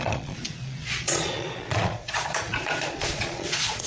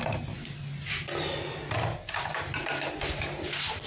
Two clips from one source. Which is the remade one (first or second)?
first